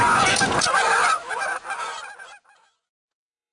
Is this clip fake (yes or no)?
yes